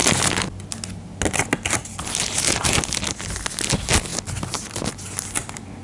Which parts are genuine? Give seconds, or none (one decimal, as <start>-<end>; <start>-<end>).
0.0-5.8